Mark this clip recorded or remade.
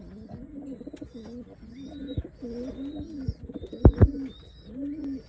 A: recorded